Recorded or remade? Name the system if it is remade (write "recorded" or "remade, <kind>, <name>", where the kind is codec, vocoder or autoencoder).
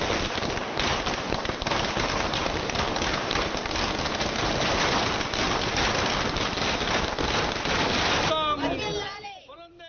recorded